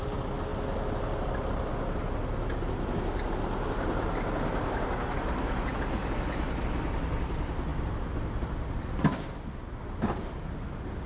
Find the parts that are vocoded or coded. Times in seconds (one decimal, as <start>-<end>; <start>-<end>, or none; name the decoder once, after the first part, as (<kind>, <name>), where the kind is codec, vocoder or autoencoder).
none